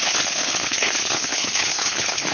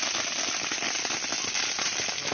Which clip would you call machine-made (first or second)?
first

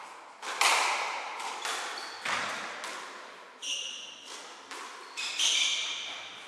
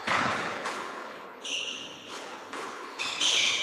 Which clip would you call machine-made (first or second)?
second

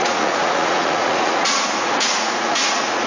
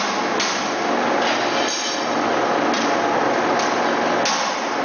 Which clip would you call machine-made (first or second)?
first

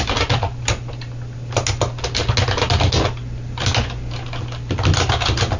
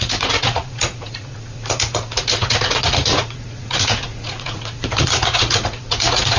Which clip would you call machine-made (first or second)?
second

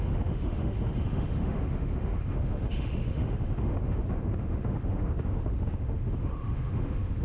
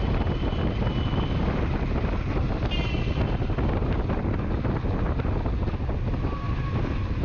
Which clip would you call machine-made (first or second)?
first